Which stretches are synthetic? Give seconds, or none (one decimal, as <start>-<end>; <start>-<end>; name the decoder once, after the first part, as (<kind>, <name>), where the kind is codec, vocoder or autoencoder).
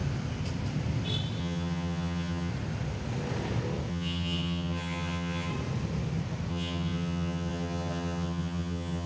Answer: 1.4-2.5 (vocoder, HiFi-GAN); 3.9-5.5; 6.5-9.1